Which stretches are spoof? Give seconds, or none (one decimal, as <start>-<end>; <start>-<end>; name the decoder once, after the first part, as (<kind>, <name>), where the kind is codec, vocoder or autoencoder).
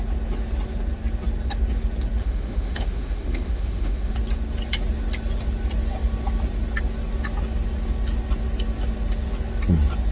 2.2-4.1 (autoencoder, DAC-VAE)